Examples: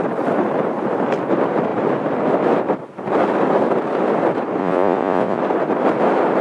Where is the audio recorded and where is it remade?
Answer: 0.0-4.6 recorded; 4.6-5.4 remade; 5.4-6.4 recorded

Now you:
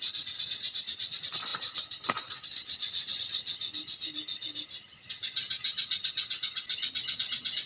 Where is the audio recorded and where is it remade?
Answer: 0.0-7.7 recorded